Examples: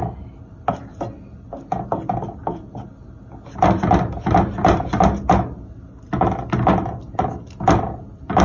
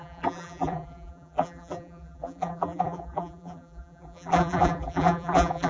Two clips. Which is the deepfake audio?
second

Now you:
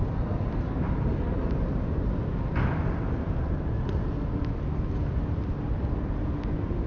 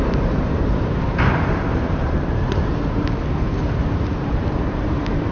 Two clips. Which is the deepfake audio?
second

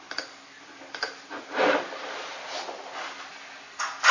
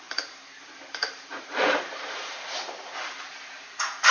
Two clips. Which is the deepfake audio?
second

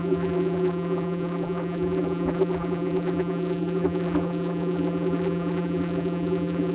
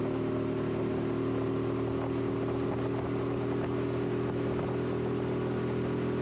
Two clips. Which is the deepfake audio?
first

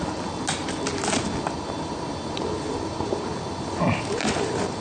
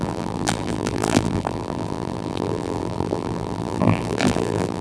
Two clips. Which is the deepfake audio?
second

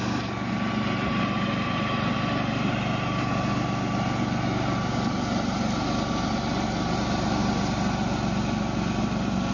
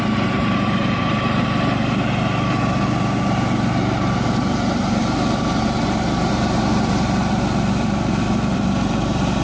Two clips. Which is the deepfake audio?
second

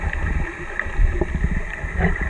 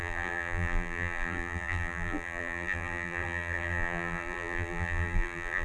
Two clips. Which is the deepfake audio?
second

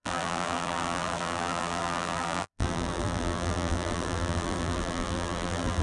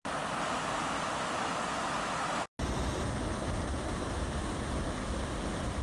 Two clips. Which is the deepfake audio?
first